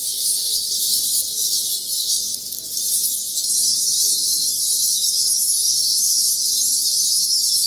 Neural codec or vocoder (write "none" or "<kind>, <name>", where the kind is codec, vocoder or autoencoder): none